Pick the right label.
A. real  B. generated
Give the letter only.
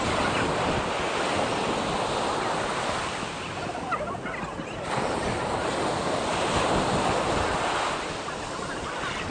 A